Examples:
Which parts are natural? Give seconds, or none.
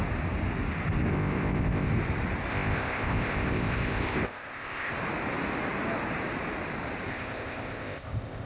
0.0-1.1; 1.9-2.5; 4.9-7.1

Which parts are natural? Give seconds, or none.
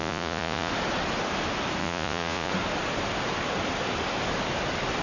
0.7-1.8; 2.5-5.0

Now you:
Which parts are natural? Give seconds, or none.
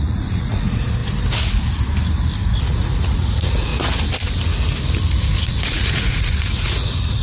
1.0-2.6; 3.7-5.2